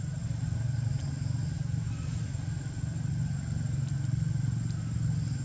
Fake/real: real